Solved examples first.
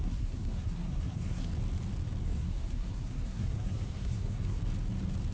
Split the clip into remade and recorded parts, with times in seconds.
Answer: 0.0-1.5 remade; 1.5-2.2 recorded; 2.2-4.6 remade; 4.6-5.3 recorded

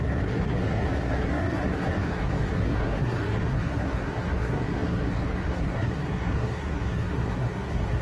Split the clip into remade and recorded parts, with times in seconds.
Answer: 0.0-8.0 remade

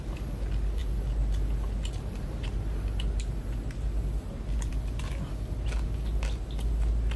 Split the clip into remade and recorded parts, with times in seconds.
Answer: 0.0-7.2 recorded

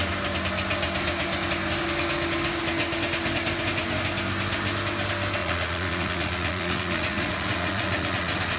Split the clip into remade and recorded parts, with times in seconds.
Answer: 0.0-5.4 recorded; 5.4-8.6 remade

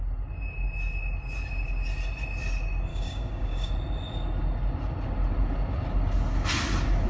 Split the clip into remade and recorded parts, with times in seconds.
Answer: 0.0-2.9 recorded; 2.9-3.7 remade; 3.7-7.1 recorded

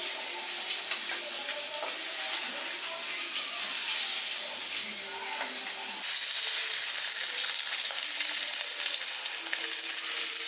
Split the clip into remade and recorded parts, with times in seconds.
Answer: 0.0-10.5 recorded